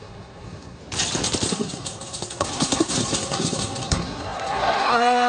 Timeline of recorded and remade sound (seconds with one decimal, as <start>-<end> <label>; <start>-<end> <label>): 0.0-0.8 remade; 0.8-1.5 recorded; 1.5-5.3 remade